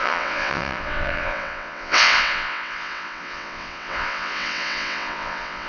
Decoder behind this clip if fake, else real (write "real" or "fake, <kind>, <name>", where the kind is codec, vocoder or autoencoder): fake, vocoder, WaveNeXt